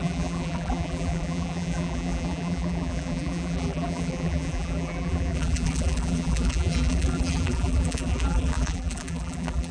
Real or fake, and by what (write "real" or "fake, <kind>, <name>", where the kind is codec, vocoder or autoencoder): fake, vocoder, BigVGAN v2